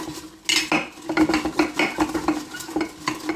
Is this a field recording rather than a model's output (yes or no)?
yes